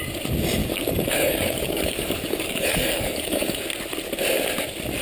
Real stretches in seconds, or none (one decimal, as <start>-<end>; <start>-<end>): 0.0-0.6; 3.6-5.0